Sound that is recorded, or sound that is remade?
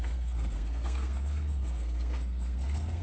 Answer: remade